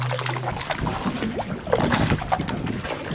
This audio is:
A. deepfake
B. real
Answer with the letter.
B